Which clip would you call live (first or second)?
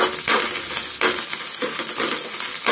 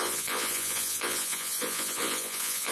first